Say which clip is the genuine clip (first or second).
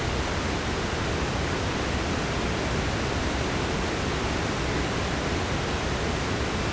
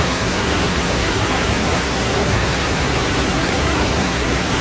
first